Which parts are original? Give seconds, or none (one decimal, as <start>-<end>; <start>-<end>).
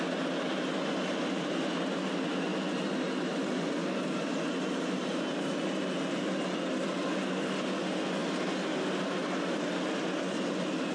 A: 0.0-10.9